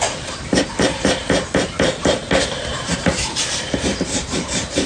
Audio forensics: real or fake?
fake